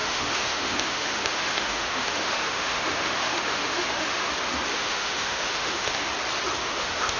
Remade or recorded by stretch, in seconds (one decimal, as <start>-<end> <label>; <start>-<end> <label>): 0.0-4.3 remade; 4.3-4.7 recorded; 4.7-6.1 remade; 6.1-6.6 recorded; 6.6-7.2 remade